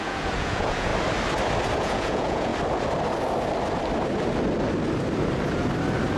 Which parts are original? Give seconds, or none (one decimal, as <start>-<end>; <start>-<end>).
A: 0.9-1.8; 2.5-6.2